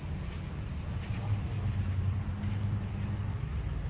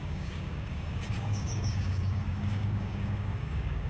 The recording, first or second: first